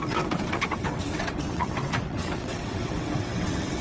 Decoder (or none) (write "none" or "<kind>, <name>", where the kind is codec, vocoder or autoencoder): vocoder, WaveNeXt